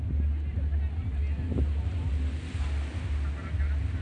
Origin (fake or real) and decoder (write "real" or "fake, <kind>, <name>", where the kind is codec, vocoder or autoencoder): real